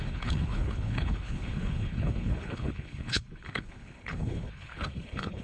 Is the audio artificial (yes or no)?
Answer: yes